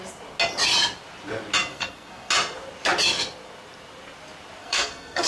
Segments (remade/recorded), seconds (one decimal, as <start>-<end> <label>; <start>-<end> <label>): 0.0-1.7 recorded; 1.7-2.3 remade; 2.3-4.6 recorded; 4.6-5.3 remade